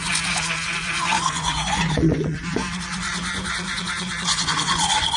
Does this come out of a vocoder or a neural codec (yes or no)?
yes